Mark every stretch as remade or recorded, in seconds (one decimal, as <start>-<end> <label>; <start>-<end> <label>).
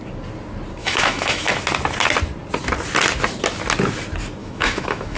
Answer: 0.0-0.8 recorded; 0.8-1.5 remade; 1.5-4.4 recorded; 4.4-5.2 remade